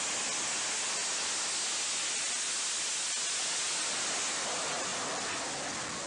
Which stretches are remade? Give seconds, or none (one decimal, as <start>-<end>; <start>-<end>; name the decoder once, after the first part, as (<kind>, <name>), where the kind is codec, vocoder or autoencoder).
none